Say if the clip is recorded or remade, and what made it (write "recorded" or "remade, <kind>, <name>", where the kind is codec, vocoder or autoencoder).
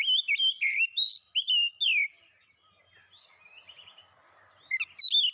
recorded